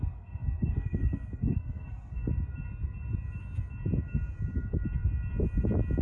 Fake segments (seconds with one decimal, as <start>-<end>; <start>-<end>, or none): 0.0-2.3

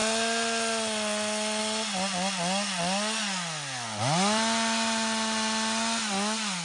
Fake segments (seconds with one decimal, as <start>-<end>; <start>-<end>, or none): none

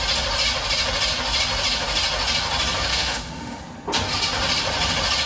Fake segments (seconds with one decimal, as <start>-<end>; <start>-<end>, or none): 2.9-3.6

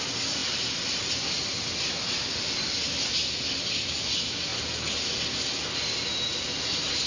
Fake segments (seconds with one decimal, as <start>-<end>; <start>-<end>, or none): none